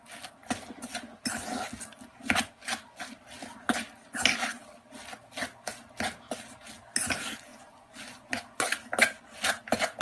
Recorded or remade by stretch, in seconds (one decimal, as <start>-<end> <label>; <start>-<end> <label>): 0.0-7.5 recorded; 7.5-8.4 remade; 8.4-10.0 recorded